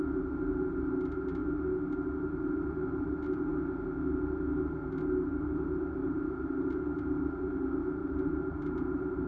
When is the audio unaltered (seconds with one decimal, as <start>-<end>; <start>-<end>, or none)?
0.0-6.0; 6.5-8.0